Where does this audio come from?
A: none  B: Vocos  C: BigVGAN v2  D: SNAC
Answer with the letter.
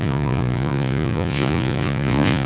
B